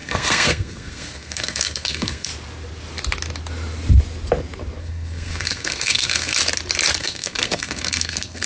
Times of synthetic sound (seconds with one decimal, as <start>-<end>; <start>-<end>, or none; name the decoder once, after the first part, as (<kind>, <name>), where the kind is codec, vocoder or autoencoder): 0.0-2.3 (codec, SNAC); 4.8-6.4; 7.0-8.5